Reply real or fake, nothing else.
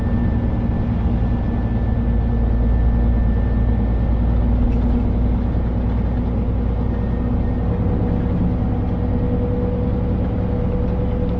real